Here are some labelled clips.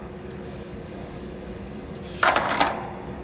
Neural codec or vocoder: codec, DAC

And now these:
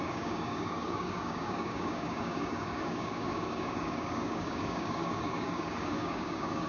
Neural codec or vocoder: codec, DAC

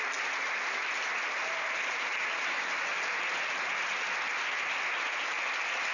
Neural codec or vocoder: none